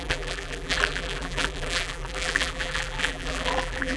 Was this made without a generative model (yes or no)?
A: no